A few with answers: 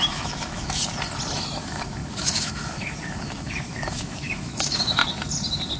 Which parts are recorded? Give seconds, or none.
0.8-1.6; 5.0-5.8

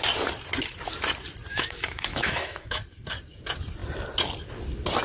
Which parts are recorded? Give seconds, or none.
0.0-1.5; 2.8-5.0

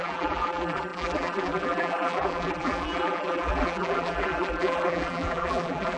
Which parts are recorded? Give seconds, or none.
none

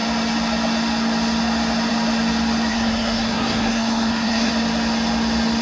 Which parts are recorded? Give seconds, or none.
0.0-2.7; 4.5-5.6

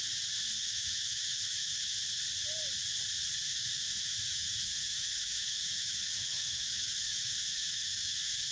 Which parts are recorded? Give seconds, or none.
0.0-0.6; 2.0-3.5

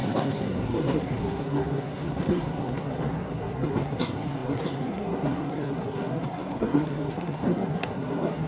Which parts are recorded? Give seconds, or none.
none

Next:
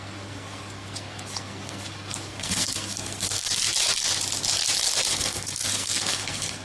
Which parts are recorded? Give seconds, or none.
3.6-5.1

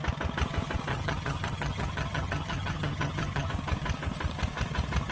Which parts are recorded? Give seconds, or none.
0.0-0.9; 3.5-5.1